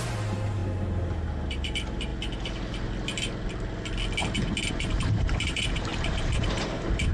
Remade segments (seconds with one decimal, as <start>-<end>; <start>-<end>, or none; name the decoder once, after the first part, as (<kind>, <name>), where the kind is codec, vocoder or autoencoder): 0.0-0.6 (vocoder, BigVGAN v2); 1.5-2.1; 4.7-7.1